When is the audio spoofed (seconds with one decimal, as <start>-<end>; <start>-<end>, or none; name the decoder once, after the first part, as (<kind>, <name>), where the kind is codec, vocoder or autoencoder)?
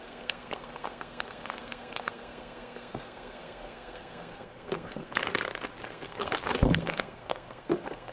0.0-5.2 (codec, SNAC); 5.8-8.1